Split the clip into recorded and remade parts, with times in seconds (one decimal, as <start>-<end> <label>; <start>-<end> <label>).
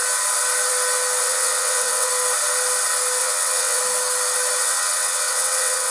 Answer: 0.0-1.2 recorded; 1.2-2.1 remade; 2.1-3.2 recorded; 3.2-3.8 remade; 3.8-4.6 recorded; 4.6-5.9 remade